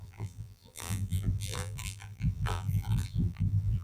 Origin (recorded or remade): remade